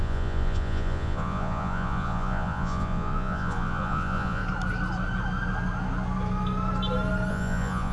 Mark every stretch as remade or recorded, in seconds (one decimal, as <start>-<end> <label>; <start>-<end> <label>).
0.0-4.4 remade; 4.4-7.3 recorded; 7.3-7.9 remade